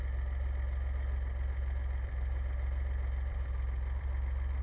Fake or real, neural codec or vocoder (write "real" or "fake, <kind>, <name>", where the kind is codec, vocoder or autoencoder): real